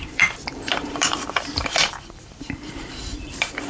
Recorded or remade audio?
remade